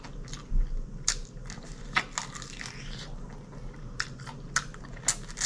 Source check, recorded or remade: recorded